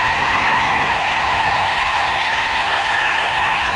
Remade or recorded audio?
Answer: remade